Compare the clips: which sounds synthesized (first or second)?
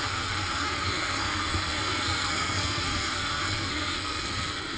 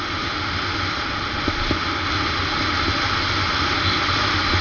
first